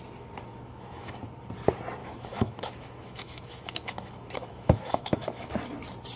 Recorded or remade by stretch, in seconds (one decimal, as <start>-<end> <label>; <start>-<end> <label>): 0.0-0.5 recorded; 0.5-1.1 remade; 1.1-2.0 recorded; 2.0-5.5 remade; 5.5-6.2 recorded

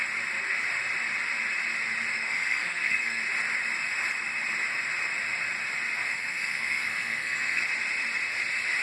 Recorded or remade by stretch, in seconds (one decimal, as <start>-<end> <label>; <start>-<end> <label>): 0.0-2.1 recorded; 2.1-3.2 remade; 3.2-6.1 recorded; 6.1-7.6 remade; 7.6-8.8 recorded

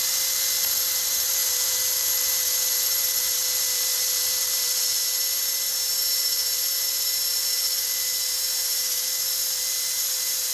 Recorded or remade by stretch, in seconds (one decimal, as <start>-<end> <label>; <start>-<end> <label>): 0.0-10.5 remade

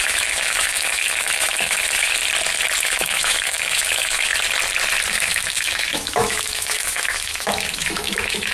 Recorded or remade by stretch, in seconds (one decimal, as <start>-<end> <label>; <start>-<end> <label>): 0.0-2.2 remade; 2.2-2.8 recorded; 2.8-4.3 remade; 4.3-5.1 recorded; 5.1-8.5 remade

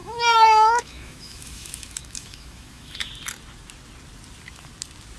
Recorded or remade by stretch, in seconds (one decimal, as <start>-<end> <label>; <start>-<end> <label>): 0.0-3.1 remade; 3.1-5.2 recorded

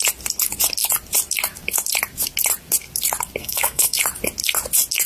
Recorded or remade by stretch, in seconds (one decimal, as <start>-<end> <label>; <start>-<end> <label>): 0.0-3.4 recorded; 3.4-4.0 remade; 4.0-5.1 recorded

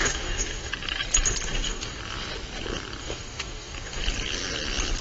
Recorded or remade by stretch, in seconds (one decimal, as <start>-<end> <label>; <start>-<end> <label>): 0.0-0.7 remade; 0.7-1.5 recorded; 1.5-2.0 remade; 2.0-3.0 recorded; 3.0-4.0 remade; 4.0-5.0 recorded